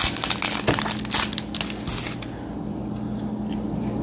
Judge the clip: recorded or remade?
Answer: recorded